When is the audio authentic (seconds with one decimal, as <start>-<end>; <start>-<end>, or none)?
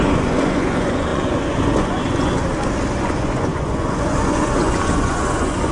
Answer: 2.4-3.0